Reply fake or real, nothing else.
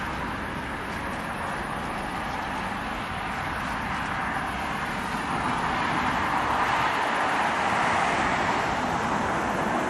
real